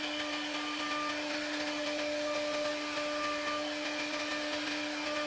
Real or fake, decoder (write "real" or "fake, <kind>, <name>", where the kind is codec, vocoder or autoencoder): real